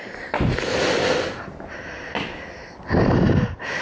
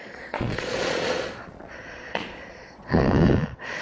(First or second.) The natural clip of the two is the first